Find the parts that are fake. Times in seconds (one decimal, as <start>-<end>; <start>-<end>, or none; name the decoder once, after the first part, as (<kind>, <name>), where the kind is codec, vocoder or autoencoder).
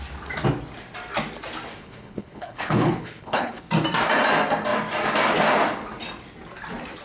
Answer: 1.7-3.6 (codec, HILCodec)